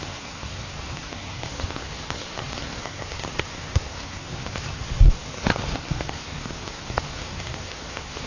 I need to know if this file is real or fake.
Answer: fake